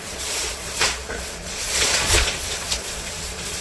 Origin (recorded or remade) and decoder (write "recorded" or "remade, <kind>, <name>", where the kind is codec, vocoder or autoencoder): remade, vocoder, Vocos